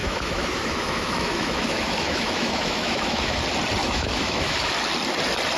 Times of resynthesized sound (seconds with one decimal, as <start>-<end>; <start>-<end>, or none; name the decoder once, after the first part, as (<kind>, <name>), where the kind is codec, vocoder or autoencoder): 0.0-3.4 (autoencoder, DAC-VAE); 3.8-4.7